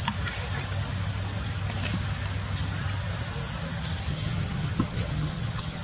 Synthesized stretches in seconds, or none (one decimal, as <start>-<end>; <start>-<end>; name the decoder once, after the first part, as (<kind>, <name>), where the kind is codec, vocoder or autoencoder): 4.1-5.8 (vocoder, HiFi-GAN)

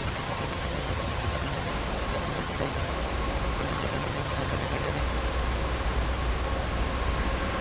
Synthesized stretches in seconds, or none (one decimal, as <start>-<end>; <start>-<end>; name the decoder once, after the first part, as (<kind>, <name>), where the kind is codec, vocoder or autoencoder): 0.0-1.7 (vocoder, HiFi-GAN); 2.1-2.9; 3.6-5.0

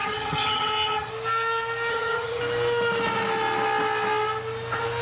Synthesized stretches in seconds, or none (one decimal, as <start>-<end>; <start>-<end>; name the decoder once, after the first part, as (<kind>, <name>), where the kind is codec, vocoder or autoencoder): 0.0-1.1 (vocoder, HiFi-GAN); 1.9-2.4

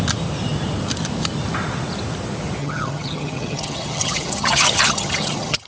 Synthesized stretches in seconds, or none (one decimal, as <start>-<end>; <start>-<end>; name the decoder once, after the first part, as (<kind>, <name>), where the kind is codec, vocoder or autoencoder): 2.6-5.7 (vocoder, HiFi-GAN)

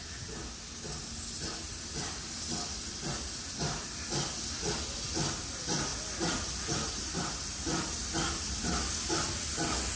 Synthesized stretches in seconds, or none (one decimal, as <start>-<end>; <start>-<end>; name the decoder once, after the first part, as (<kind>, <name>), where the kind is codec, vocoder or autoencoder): none

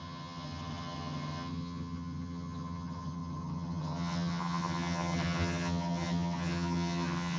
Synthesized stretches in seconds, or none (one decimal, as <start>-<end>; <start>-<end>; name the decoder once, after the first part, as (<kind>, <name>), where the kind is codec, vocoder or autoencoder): 0.0-7.4 (vocoder, HiFi-GAN)